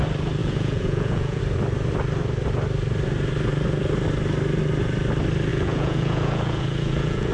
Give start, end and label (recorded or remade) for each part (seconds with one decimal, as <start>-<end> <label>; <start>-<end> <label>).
0.0-0.4 recorded; 0.4-1.4 remade; 1.4-5.5 recorded; 5.5-7.3 remade